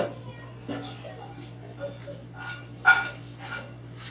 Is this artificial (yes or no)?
no